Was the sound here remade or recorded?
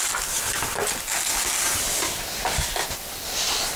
recorded